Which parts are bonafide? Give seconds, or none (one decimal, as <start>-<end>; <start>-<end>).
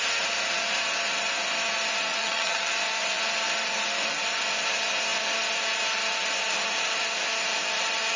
0.0-2.2; 2.7-8.2